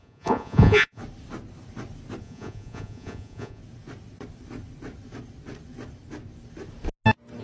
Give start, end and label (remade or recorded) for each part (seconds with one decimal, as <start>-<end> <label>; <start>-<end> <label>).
0.0-1.0 remade; 1.0-2.2 recorded; 2.2-3.6 remade; 3.6-7.4 recorded